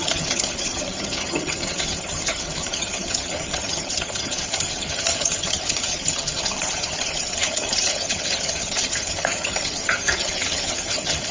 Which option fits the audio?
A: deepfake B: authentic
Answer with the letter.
A